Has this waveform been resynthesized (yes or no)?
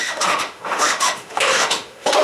yes